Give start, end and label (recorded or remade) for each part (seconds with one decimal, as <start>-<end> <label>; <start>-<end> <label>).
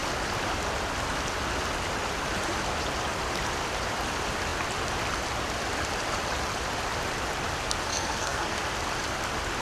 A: 0.0-7.9 recorded; 7.9-8.6 remade; 8.6-9.6 recorded